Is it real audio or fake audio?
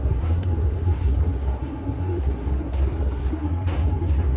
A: fake